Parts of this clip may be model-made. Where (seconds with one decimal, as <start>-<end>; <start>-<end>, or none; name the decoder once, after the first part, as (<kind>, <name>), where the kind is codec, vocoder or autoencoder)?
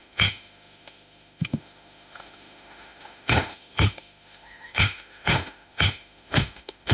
0.0-6.9 (autoencoder, DAC-VAE)